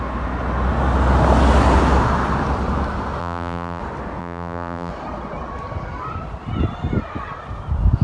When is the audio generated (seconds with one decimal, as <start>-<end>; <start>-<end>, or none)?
3.2-3.8; 4.2-4.9